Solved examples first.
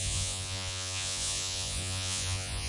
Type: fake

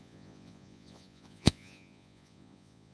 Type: fake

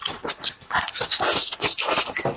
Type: real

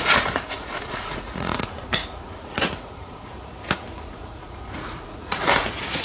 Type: fake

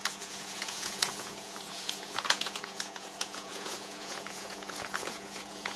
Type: fake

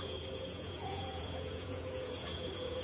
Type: fake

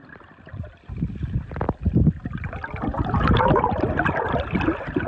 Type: real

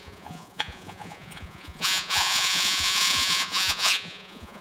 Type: fake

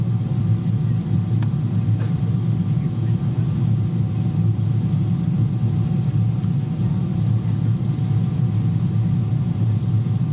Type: real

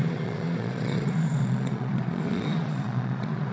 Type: fake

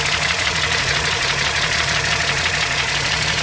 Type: fake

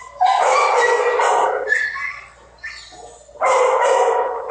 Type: real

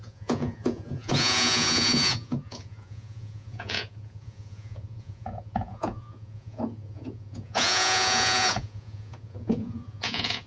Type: fake